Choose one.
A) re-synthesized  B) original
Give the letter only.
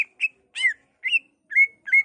B